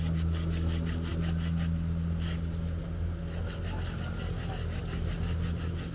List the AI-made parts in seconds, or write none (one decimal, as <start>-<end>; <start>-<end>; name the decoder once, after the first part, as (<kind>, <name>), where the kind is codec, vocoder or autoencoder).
none